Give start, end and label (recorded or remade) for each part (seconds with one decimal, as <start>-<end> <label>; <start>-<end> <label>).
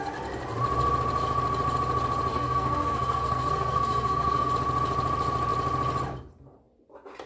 0.0-2.3 recorded; 2.3-4.5 remade; 4.5-7.3 recorded